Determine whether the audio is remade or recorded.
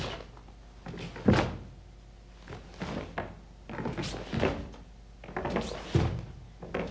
recorded